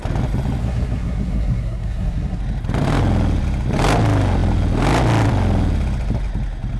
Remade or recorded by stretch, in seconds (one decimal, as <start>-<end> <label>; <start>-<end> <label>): 0.0-0.6 recorded; 0.6-2.4 remade; 2.4-6.8 recorded